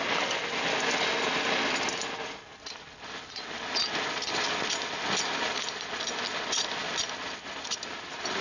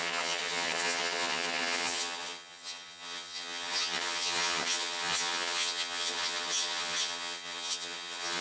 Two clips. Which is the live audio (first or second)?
first